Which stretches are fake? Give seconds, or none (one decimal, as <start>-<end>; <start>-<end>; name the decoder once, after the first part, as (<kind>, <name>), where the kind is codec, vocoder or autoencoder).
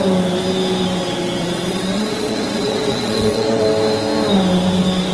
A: 1.4-3.6 (vocoder, Vocos)